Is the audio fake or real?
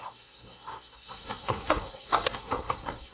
fake